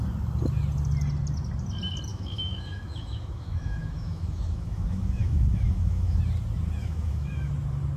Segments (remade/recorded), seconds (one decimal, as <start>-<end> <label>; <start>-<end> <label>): 0.0-2.1 recorded; 2.1-6.2 remade; 6.2-6.8 recorded; 6.8-7.5 remade; 7.5-8.0 recorded